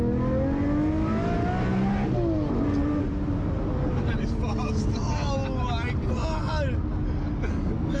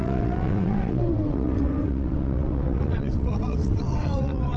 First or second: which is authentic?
first